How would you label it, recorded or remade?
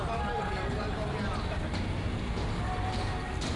recorded